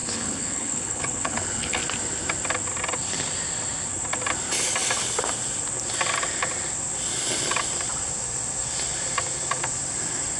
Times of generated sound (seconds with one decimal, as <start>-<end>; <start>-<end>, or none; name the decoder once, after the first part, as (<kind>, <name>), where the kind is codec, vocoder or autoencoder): 0.0-1.8 (codec, HILCodec)